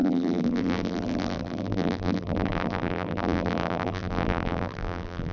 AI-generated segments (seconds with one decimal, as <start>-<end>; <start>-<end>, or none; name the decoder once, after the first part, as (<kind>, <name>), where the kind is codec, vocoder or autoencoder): 0.0-5.3 (vocoder, BigVGAN v2)

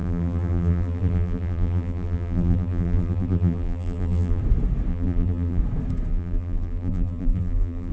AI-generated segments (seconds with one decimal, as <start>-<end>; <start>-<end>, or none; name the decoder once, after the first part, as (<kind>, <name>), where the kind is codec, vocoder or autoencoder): 0.0-4.4 (vocoder, BigVGAN v2); 4.9-5.6; 6.1-7.9

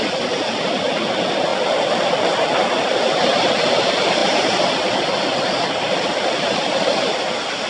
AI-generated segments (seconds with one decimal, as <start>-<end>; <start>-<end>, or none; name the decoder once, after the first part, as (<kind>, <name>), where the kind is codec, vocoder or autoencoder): 1.5-2.1 (vocoder, BigVGAN v2)

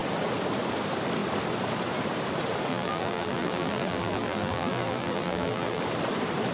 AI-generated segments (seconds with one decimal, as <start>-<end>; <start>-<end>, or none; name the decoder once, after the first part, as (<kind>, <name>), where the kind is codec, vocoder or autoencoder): 2.7-5.8 (vocoder, BigVGAN v2)

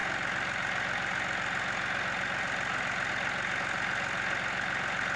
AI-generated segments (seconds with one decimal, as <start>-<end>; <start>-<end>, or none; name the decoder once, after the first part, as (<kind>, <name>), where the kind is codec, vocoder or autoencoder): none

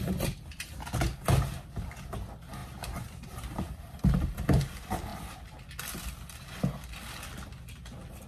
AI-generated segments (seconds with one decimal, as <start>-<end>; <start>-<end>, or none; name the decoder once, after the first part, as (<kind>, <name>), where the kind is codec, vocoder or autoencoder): none

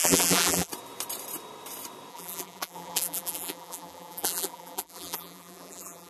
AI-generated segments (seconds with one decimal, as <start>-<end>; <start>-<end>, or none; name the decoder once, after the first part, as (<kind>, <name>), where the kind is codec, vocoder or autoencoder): 0.0-0.7 (vocoder, BigVGAN v2); 2.1-6.1